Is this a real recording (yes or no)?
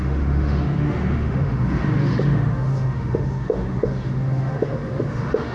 no